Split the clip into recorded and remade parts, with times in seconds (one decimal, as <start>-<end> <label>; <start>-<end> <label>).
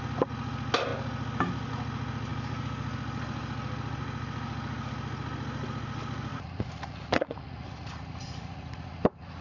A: 0.0-6.3 recorded; 6.3-9.4 remade